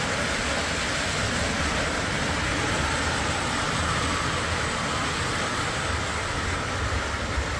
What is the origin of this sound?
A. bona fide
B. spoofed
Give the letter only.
A